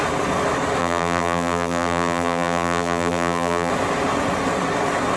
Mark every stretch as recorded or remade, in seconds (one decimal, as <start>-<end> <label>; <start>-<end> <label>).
0.0-0.8 recorded; 0.8-3.7 remade; 3.7-5.2 recorded